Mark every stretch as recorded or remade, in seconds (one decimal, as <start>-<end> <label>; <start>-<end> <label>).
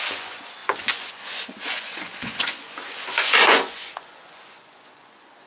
0.0-5.5 remade